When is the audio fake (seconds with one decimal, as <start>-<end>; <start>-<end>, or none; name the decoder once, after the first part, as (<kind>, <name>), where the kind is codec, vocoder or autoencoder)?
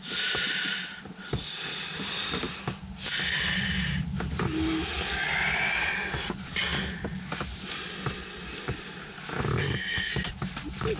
9.6-10.1 (codec, SNAC)